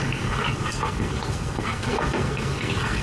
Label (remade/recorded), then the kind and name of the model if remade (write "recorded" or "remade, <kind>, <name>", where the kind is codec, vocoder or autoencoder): remade, codec, SNAC